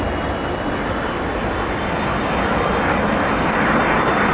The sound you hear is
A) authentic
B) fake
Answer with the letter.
A